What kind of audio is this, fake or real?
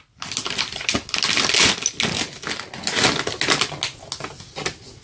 real